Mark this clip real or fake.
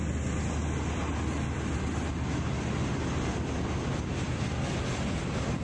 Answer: real